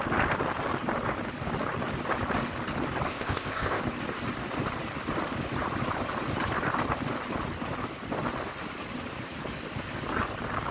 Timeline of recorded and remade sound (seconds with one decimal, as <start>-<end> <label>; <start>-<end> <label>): 0.0-3.1 recorded; 3.1-3.8 remade; 3.8-10.7 recorded